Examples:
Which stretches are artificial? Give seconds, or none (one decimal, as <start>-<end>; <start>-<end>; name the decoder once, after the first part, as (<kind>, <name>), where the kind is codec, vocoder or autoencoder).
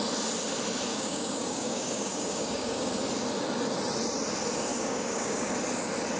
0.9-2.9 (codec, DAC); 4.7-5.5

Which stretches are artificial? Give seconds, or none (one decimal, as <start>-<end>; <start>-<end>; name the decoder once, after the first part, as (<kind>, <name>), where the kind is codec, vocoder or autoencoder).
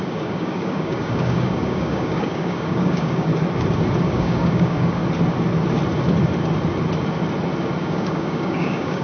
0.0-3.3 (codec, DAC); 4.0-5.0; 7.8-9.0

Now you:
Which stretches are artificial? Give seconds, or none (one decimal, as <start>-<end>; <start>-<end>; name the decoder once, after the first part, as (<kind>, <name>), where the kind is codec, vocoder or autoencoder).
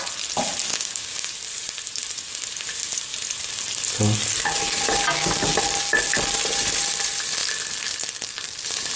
0.7-1.3 (codec, DAC)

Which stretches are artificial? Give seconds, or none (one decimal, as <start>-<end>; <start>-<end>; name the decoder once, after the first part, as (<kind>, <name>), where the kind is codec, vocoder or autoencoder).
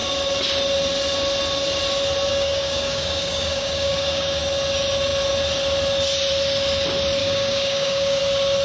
2.3-4.4 (codec, DAC); 7.2-8.2